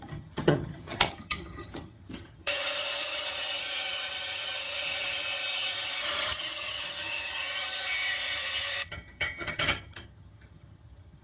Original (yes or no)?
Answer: no